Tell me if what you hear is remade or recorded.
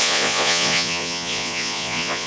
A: remade